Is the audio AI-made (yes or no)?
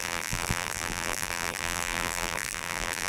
yes